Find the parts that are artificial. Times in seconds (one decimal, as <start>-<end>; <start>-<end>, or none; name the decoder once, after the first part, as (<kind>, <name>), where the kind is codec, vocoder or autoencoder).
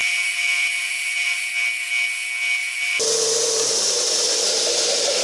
0.0-1.4 (vocoder, BigVGAN v2); 2.6-4.8